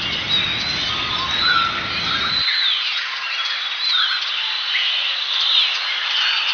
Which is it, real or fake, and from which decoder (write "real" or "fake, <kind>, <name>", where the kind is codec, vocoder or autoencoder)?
real